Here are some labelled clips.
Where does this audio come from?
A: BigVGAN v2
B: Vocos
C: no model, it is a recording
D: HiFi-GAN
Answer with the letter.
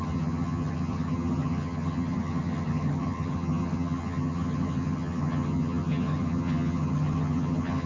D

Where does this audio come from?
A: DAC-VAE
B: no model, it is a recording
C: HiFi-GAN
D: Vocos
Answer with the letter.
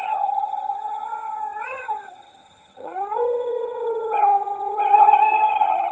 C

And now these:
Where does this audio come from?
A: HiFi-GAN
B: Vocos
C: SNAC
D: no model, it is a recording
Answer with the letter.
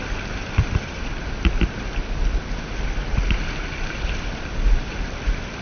D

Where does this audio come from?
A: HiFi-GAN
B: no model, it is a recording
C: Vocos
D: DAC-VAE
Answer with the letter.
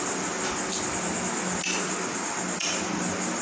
B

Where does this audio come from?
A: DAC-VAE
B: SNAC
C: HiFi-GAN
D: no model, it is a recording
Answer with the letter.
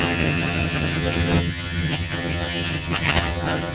C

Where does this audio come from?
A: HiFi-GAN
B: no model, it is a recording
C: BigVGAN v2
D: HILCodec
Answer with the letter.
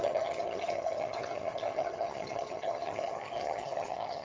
A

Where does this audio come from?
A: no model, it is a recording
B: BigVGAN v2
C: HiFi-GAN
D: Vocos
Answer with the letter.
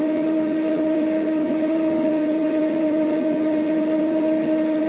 C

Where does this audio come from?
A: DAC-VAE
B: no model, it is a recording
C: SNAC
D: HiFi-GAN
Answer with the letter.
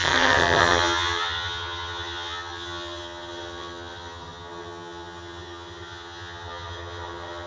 D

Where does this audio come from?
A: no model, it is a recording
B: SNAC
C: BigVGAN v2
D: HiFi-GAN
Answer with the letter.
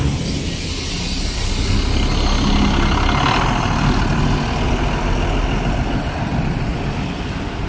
A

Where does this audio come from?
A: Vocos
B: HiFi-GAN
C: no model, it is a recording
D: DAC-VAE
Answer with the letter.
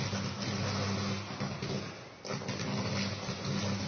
C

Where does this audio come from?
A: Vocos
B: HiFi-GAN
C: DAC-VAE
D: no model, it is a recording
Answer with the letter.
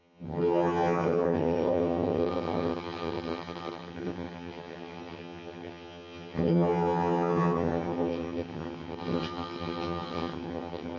B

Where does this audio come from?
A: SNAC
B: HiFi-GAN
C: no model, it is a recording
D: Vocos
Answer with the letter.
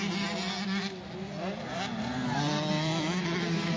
C